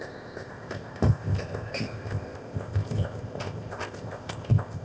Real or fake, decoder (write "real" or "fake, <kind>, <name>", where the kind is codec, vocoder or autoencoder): fake, codec, ZipCodec